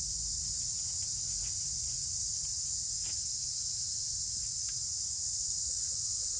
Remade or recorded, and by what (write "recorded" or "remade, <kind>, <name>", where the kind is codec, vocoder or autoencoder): remade, vocoder, Vocos